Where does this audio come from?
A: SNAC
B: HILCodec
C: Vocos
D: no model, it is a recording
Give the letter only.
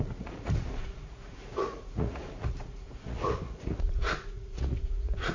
C